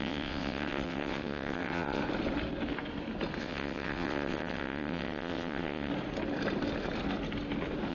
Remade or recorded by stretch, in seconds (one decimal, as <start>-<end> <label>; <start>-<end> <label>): 0.0-2.0 remade; 2.0-3.4 recorded; 3.4-5.9 remade; 5.9-7.9 recorded